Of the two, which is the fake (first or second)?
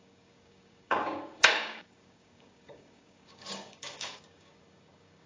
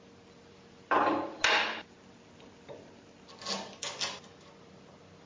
first